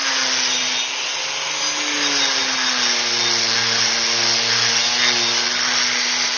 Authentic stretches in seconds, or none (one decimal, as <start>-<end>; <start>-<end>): 0.0-6.4